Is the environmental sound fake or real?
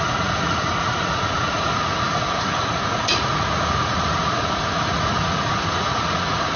fake